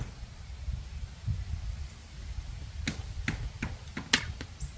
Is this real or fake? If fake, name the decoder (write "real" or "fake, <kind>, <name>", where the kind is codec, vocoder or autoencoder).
real